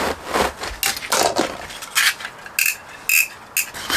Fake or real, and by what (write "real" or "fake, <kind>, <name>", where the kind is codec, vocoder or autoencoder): real